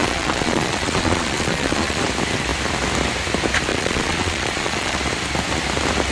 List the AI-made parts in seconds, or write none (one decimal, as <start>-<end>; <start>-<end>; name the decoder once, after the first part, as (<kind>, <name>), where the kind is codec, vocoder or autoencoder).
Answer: 0.0-2.0 (vocoder, Vocos); 3.7-5.0